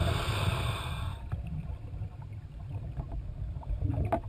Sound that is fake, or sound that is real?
real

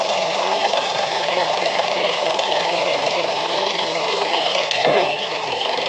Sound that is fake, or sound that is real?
fake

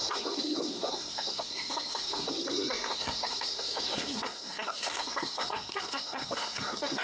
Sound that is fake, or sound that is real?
fake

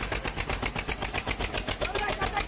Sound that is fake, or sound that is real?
real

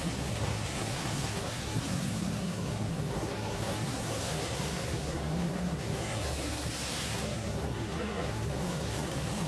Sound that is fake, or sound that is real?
fake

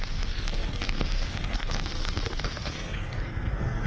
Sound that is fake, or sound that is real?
fake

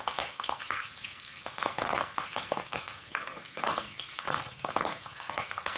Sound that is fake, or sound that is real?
fake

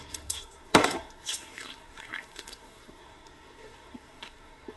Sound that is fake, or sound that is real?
fake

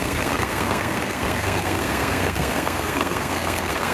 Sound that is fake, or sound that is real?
fake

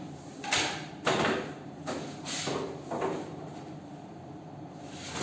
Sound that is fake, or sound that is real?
real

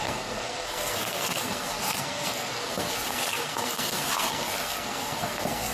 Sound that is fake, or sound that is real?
fake